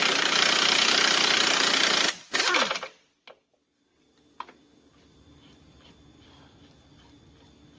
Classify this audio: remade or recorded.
recorded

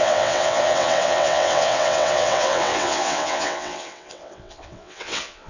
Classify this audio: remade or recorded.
remade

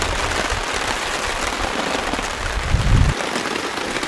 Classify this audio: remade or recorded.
recorded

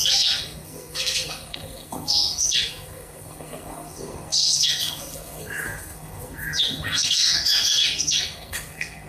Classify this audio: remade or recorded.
remade